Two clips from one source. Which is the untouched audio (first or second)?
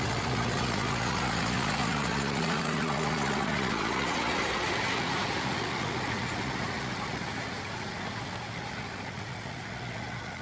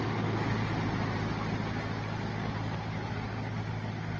second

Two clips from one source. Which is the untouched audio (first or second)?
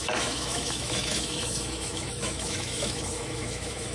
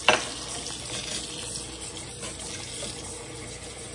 second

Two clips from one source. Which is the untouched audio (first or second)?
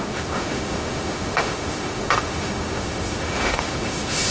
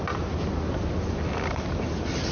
second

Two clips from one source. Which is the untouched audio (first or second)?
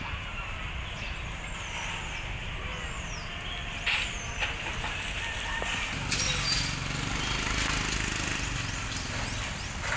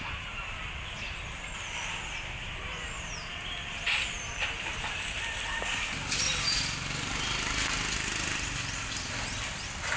first